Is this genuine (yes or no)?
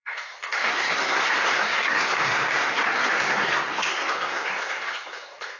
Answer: no